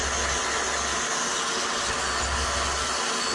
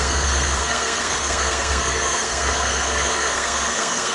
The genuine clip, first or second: first